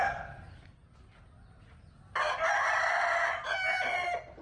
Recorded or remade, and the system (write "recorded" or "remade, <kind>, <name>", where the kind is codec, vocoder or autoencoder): recorded